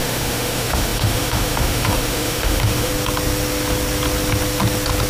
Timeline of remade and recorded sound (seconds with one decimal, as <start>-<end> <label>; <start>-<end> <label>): 0.0-2.9 remade; 2.9-5.1 recorded